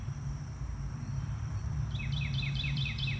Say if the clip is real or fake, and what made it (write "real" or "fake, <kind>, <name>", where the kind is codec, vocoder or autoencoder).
fake, vocoder, BigVGAN v2